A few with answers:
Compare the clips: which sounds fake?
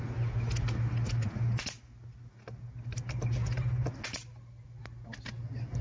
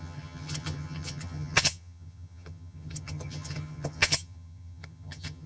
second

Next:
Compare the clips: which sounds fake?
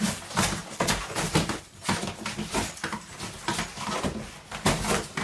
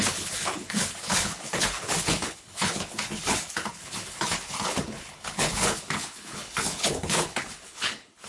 second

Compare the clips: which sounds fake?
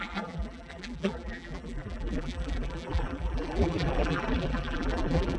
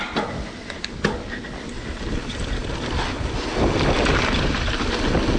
first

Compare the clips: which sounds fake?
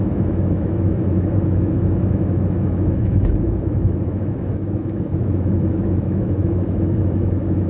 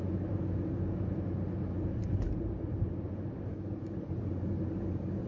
first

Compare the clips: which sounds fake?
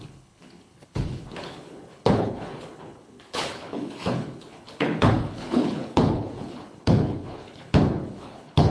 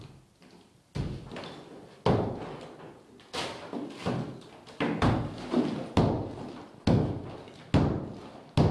first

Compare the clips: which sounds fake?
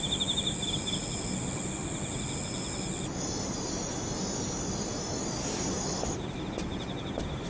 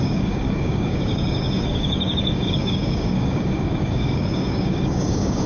second